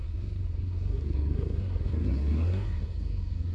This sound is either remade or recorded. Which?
remade